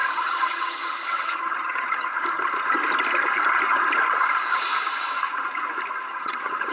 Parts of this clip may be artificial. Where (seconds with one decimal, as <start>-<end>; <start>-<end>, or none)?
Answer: 0.0-2.1; 6.1-6.7